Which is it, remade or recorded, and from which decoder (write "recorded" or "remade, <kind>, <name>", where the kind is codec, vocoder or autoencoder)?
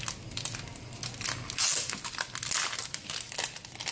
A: recorded